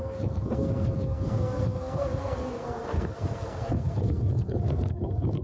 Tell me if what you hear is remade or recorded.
remade